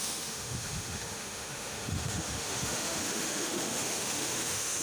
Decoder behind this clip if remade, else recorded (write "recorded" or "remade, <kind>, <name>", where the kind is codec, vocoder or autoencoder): remade, autoencoder, DAC-VAE